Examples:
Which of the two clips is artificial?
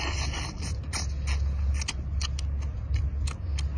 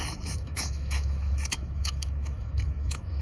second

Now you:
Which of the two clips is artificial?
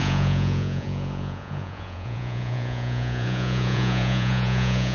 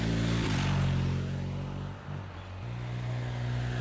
first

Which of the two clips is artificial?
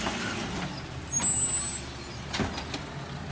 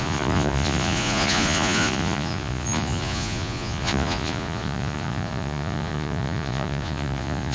second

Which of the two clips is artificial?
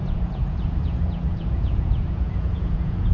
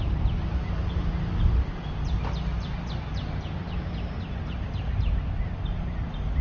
first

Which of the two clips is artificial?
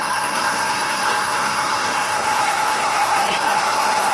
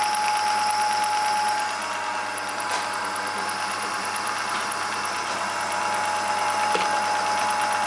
first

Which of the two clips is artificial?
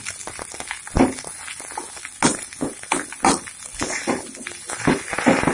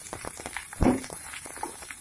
second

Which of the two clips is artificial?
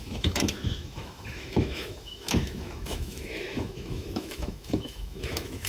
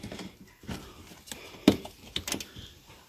first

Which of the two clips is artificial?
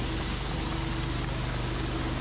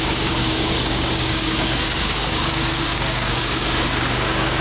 second